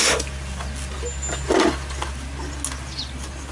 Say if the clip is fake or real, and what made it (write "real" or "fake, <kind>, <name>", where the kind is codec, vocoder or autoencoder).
real